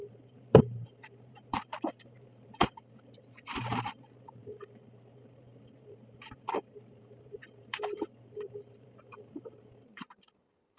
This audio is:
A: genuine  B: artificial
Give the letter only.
B